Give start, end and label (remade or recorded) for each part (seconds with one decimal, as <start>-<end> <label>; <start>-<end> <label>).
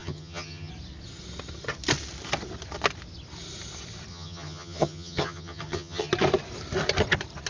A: 0.0-0.7 remade; 0.7-4.1 recorded; 4.1-6.1 remade; 6.1-7.5 recorded